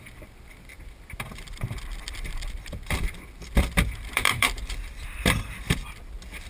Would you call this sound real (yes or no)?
no